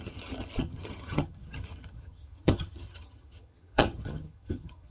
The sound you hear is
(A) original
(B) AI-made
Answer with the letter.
B